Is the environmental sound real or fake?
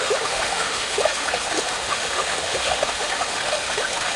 fake